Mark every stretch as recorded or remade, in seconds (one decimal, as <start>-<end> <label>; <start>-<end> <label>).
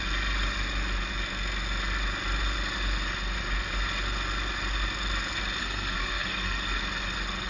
0.0-5.6 recorded; 5.6-6.8 remade; 6.8-7.5 recorded